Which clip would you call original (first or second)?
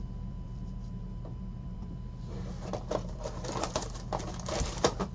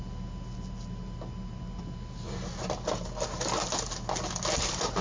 second